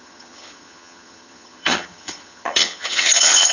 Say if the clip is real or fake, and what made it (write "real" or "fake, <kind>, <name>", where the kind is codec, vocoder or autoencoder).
fake, vocoder, HiFi-GAN